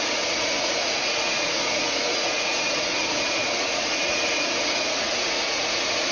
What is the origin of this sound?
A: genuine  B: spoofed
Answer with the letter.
B